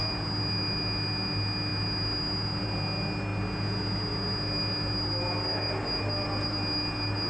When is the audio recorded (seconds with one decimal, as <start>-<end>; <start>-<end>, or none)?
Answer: 0.0-7.3